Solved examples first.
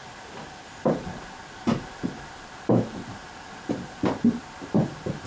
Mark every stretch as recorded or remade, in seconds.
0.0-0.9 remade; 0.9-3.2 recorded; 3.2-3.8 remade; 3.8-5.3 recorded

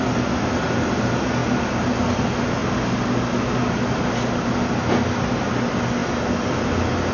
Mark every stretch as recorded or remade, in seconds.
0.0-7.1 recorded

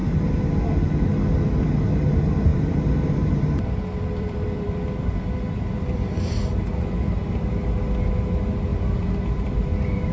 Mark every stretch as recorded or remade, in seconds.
0.0-2.5 recorded; 2.5-6.2 remade; 6.2-8.7 recorded; 8.7-10.1 remade